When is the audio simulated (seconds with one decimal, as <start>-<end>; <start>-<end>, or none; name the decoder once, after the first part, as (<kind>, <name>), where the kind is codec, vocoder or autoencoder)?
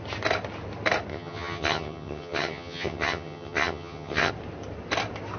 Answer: 1.1-4.3 (vocoder, HiFi-GAN)